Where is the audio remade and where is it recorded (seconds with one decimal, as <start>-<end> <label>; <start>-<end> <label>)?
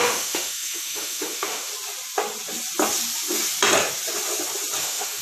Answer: 0.0-1.7 remade; 1.7-4.8 recorded; 4.8-5.2 remade